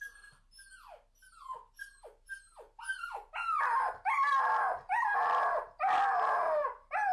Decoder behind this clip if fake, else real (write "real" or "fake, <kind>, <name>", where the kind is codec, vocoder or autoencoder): real